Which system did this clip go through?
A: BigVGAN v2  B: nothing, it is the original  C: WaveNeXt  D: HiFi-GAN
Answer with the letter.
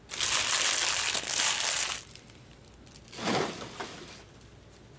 B